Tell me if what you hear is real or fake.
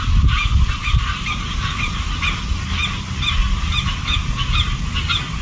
real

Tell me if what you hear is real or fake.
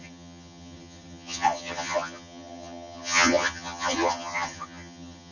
fake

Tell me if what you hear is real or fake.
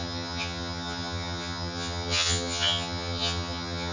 fake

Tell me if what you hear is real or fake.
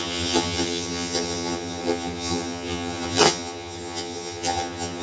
fake